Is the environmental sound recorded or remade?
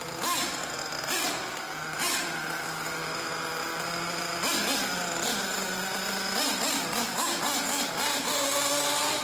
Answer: recorded